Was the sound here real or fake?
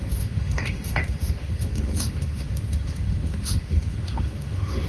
fake